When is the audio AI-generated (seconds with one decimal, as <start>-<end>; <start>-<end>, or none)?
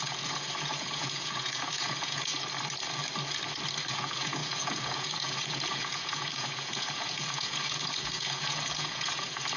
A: 0.0-2.3; 3.9-9.6